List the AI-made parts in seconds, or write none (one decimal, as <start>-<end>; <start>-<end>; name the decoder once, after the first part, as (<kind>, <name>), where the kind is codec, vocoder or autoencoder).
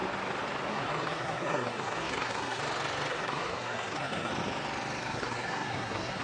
0.7-2.6 (codec, SNAC); 3.1-4.3; 5.0-6.2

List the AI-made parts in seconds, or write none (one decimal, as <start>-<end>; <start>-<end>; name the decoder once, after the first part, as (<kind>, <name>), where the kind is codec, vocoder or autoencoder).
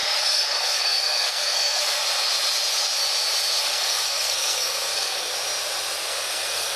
0.0-2.0 (codec, SNAC); 3.6-5.3; 6.1-6.8